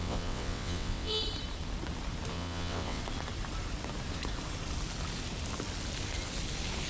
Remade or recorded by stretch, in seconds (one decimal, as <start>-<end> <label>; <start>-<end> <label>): 0.0-1.2 remade; 1.2-2.3 recorded; 2.3-3.0 remade; 3.0-6.9 recorded